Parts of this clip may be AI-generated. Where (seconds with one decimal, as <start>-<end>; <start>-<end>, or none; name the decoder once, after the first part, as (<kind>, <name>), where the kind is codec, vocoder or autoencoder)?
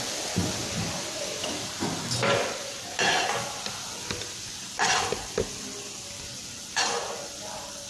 none